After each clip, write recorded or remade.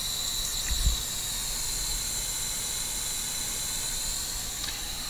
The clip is recorded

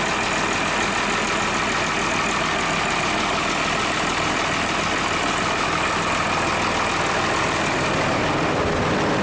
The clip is recorded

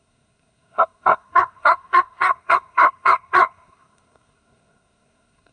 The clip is remade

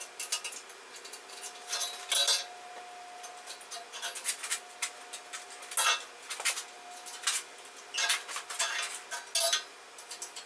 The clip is recorded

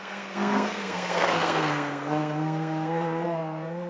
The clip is remade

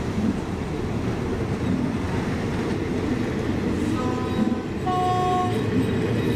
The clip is recorded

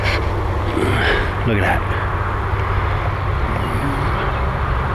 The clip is recorded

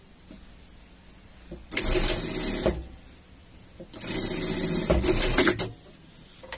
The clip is recorded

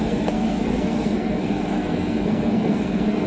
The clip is remade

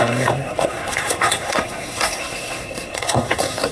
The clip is remade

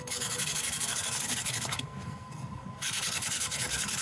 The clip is remade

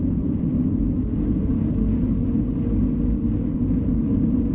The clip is recorded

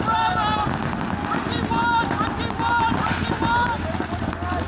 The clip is recorded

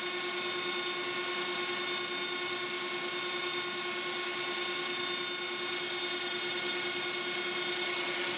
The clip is recorded